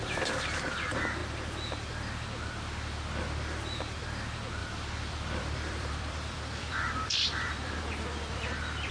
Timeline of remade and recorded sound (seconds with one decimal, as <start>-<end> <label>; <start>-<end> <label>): 0.0-4.6 recorded; 4.6-7.8 remade; 7.8-8.9 recorded